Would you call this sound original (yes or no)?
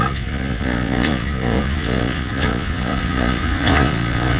no